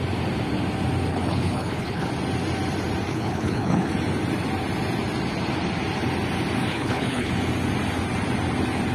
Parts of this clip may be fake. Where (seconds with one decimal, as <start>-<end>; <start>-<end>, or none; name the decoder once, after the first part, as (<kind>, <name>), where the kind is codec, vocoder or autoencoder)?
1.1-2.1 (codec, HILCodec); 3.1-3.9; 6.7-7.3

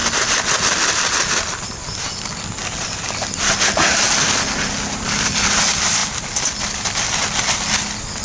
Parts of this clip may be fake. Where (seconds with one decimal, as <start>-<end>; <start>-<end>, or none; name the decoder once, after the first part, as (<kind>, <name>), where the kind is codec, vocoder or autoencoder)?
none

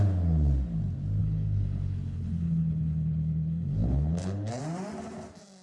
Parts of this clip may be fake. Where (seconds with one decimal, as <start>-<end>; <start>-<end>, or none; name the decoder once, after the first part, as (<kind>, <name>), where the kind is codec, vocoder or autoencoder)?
1.2-4.6 (codec, HILCodec)